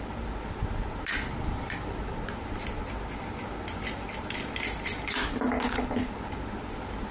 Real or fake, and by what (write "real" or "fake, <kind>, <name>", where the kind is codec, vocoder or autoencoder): real